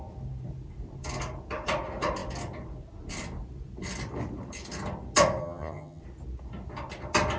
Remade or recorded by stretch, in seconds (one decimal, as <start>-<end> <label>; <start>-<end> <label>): 0.0-5.4 recorded; 5.4-6.0 remade; 6.0-7.4 recorded